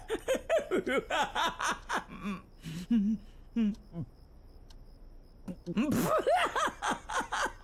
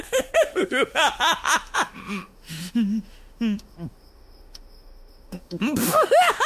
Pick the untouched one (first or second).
first